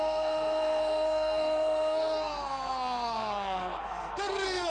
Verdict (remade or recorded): remade